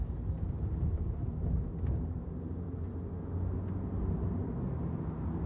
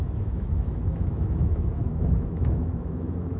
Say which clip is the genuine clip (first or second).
first